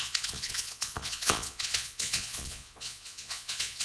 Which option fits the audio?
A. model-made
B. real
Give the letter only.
A